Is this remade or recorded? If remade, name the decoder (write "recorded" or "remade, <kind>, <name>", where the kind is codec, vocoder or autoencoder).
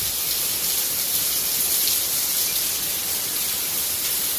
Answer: recorded